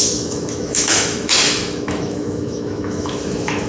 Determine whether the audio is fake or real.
fake